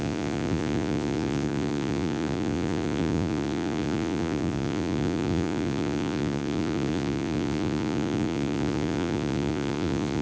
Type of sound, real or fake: fake